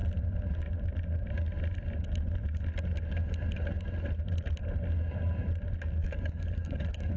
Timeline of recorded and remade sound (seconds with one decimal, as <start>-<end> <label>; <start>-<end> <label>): 0.0-6.0 recorded; 6.0-7.2 remade